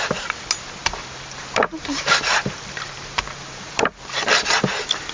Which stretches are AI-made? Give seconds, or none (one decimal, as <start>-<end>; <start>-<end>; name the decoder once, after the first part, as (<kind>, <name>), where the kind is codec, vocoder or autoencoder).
0.8-3.9 (vocoder, BigVGAN v2)